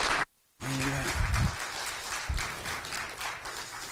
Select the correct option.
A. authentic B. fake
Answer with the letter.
A